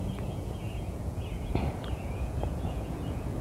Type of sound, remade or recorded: remade